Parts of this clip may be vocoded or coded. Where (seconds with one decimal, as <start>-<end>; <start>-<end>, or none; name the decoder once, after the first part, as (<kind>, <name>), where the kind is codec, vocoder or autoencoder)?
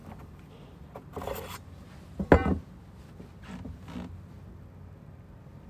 none